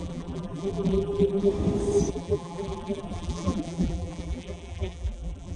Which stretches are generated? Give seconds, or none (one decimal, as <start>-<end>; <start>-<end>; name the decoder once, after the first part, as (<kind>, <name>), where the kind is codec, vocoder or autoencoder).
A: 0.0-1.5 (vocoder, BigVGAN v2); 2.1-5.6